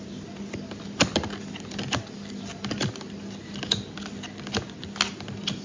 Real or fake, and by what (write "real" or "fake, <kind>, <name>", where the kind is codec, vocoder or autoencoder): real